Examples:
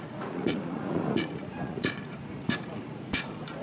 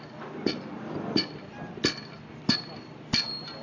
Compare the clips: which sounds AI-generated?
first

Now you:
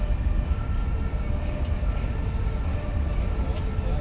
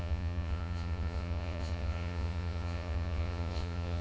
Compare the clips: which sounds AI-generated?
second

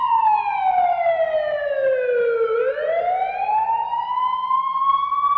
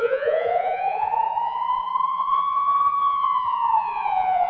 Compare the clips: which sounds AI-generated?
second